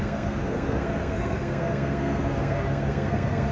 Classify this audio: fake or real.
fake